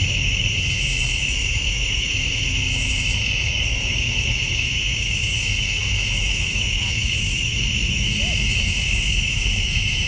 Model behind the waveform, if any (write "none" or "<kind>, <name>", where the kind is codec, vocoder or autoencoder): autoencoder, DAC-VAE